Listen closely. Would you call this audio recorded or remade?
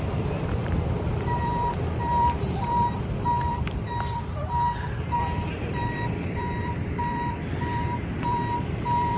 remade